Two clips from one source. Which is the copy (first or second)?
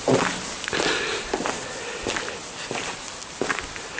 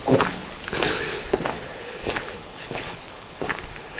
second